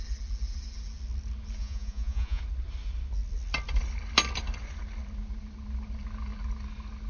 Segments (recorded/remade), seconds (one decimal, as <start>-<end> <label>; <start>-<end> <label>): 0.0-1.6 recorded; 1.6-2.4 remade; 2.4-7.1 recorded

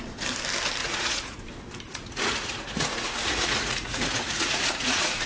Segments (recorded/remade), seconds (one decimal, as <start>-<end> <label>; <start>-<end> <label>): 0.0-0.8 recorded; 0.8-1.4 remade; 1.4-1.9 recorded; 1.9-5.3 remade

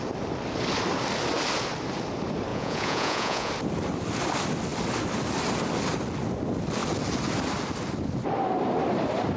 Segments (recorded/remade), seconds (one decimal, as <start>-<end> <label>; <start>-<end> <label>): 0.0-2.5 recorded; 2.5-3.5 remade; 3.5-9.4 recorded

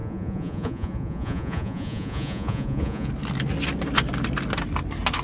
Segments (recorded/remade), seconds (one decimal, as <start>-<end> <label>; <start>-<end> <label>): 0.0-3.1 remade; 3.1-5.2 recorded

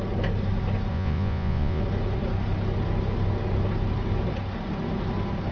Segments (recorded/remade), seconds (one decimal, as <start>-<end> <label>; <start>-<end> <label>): 0.0-0.9 recorded; 0.9-1.8 remade; 1.8-5.5 recorded